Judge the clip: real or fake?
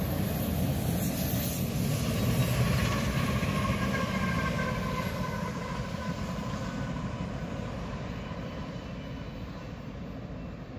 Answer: real